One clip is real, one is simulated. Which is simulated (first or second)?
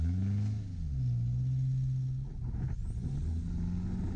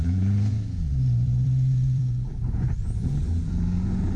second